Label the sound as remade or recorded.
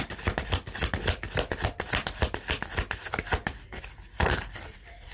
remade